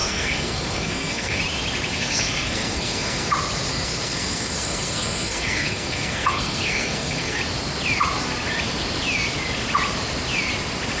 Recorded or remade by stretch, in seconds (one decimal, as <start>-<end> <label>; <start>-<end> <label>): 0.0-1.4 remade; 1.4-1.9 recorded; 1.9-3.3 remade; 3.3-3.7 recorded; 3.7-7.4 remade; 7.4-11.0 recorded

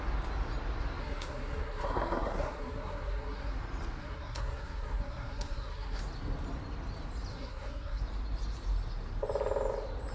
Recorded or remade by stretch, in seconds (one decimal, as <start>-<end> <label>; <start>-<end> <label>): 0.0-1.0 recorded; 1.0-3.5 remade; 3.5-4.0 recorded; 4.0-6.0 remade; 6.0-7.3 recorded; 7.3-8.0 remade; 8.0-10.1 recorded